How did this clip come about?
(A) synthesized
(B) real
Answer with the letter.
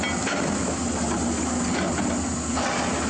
B